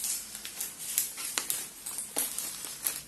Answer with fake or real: fake